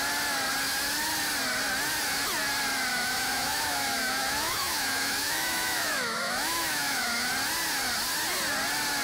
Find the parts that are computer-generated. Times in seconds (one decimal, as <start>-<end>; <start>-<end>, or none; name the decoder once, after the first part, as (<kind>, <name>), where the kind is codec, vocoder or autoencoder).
2.9-7.3 (autoencoder, DAC-VAE)